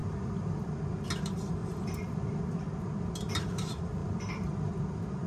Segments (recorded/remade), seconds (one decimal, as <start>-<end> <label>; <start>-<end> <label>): 0.0-0.8 remade; 0.8-1.6 recorded; 1.6-2.4 remade; 2.4-4.0 recorded; 4.0-4.8 remade; 4.8-5.3 recorded